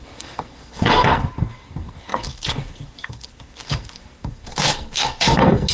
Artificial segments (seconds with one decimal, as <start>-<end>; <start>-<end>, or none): 0.0-5.7